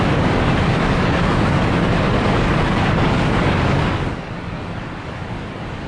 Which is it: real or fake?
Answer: fake